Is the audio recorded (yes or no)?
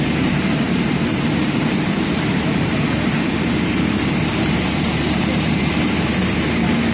no